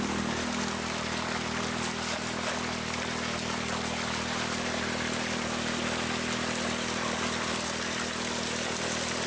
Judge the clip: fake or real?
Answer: real